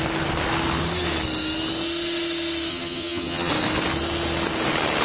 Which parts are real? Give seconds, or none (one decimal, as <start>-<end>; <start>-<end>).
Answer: 0.0-2.7; 3.5-5.0